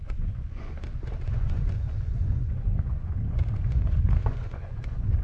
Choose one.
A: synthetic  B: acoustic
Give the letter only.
A